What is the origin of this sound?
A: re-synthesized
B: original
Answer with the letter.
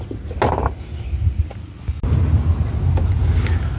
B